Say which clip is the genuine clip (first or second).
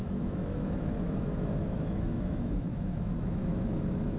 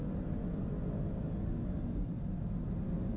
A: second